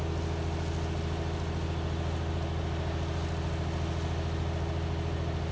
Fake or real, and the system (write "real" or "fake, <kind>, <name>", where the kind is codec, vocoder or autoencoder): real